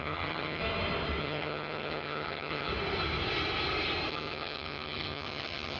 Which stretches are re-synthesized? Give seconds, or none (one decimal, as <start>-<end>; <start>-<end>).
0.0-0.6; 1.2-2.7; 4.1-5.8